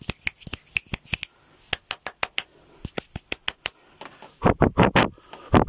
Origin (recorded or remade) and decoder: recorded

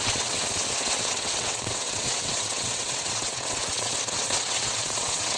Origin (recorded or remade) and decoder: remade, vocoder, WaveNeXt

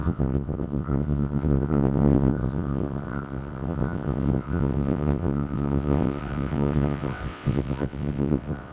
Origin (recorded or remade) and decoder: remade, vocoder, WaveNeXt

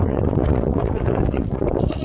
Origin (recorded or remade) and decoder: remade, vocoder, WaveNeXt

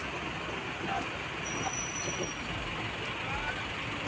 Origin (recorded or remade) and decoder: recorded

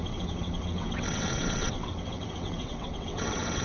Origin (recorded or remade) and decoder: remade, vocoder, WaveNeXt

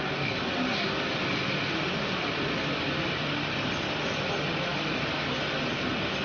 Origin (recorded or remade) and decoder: recorded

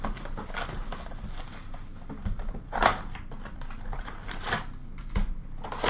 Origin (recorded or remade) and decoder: recorded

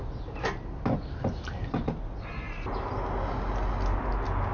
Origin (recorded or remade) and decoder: recorded